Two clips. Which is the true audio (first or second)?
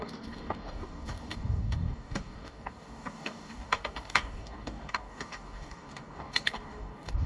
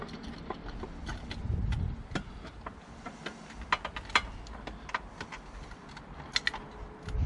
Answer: second